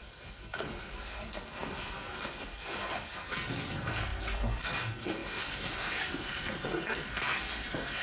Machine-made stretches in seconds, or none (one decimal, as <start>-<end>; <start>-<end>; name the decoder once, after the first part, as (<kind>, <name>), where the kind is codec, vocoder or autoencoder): 0.0-8.0 (codec, SNAC)